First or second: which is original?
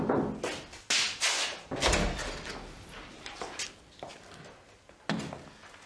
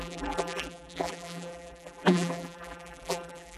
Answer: first